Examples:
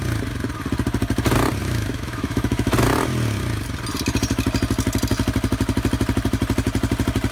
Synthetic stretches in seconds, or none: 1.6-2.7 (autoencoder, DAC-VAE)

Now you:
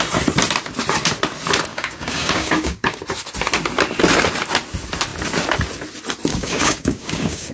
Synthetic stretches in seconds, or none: 1.7-3.0 (codec, DAC); 6.3-7.5

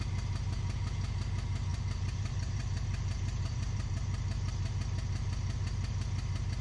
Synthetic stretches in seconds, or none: 1.7-4.7 (vocoder, BigVGAN v2)

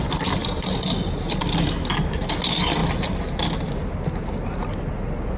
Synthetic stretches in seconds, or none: 0.4-1.4 (vocoder, BigVGAN v2)

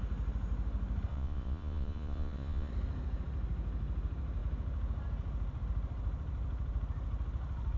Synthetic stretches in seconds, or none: 1.1-2.7 (vocoder, Vocos)